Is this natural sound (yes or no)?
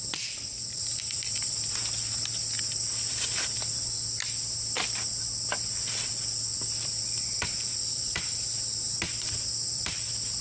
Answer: yes